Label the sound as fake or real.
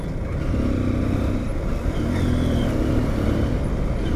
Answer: real